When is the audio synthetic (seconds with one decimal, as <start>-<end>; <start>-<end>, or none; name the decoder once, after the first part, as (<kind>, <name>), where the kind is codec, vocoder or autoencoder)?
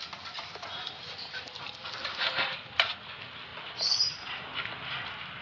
none